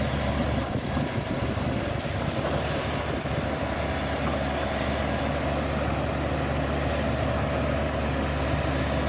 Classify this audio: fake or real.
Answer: real